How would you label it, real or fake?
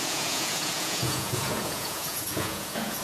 fake